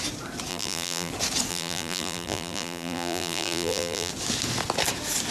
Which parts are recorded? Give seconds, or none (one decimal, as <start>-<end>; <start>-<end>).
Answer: 0.0-0.5; 1.1-1.5; 4.1-5.3